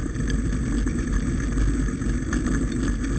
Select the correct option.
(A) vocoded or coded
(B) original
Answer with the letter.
B